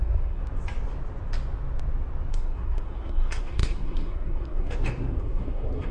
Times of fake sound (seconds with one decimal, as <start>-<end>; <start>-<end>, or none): 0.0-0.4; 2.3-5.9